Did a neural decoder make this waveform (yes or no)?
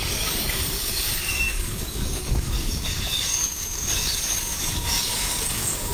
yes